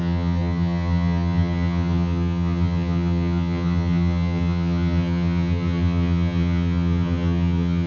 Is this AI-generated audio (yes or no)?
yes